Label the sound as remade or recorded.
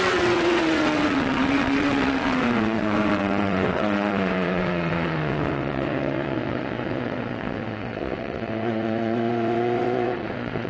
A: remade